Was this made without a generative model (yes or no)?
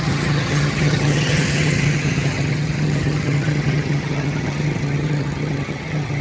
no